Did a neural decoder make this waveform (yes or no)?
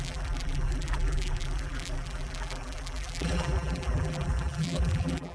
yes